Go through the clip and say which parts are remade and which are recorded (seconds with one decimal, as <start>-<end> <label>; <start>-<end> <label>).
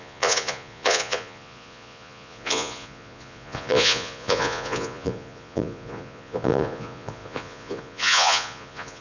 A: 0.0-9.0 remade